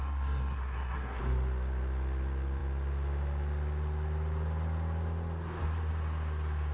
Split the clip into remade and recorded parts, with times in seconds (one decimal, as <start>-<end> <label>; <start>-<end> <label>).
0.0-1.2 remade; 1.2-6.7 recorded